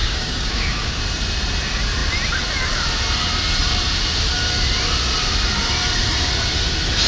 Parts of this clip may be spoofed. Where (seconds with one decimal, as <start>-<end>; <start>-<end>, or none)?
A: 0.0-1.0